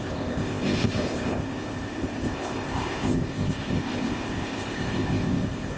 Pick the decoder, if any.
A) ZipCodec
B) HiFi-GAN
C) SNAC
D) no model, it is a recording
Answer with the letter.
A